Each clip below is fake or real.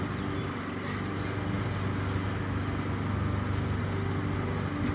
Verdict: real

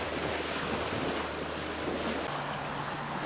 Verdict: real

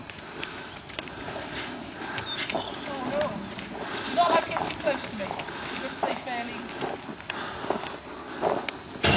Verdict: real